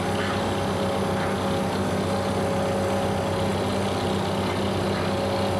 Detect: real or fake real